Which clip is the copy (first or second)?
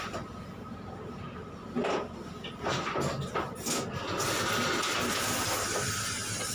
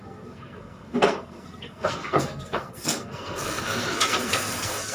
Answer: second